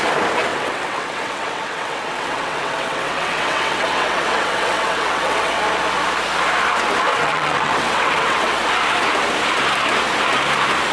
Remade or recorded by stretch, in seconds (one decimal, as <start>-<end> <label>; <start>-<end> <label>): 0.0-0.5 recorded; 0.5-5.6 remade; 5.6-7.1 recorded; 7.1-8.6 remade; 8.6-10.9 recorded